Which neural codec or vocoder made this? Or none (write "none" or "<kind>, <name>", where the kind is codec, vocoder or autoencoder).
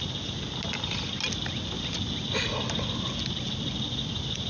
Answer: none